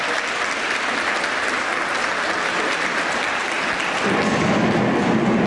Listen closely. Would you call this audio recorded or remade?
recorded